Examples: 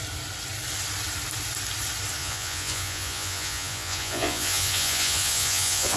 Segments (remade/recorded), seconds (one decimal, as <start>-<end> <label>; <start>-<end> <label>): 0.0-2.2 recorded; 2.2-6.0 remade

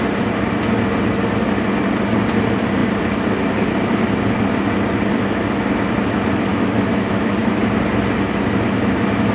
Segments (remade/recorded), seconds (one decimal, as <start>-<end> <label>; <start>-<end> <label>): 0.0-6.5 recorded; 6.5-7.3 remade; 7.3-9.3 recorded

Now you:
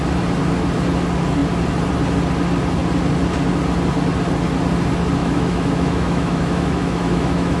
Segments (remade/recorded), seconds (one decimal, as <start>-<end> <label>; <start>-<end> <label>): 0.0-5.2 recorded; 5.2-7.6 remade

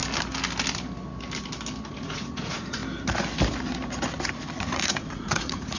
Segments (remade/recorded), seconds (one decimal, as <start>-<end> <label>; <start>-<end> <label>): 0.0-1.9 recorded; 1.9-2.8 remade; 2.8-4.6 recorded; 4.6-5.8 remade

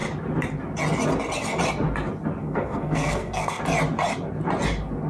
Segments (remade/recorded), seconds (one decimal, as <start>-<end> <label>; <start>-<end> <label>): 0.0-2.4 recorded; 2.4-3.6 remade; 3.6-5.1 recorded